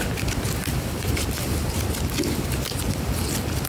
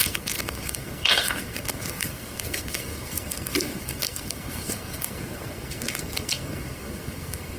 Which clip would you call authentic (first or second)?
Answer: first